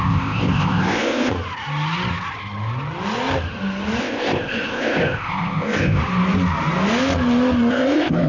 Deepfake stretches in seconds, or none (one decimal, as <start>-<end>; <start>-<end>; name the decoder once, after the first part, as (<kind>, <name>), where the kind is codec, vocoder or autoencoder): 0.0-1.3 (codec, ZipCodec); 4.0-6.0; 7.7-8.3